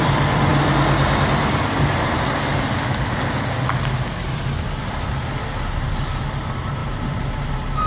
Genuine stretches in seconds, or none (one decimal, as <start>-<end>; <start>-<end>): 0.5-4.2; 5.4-5.9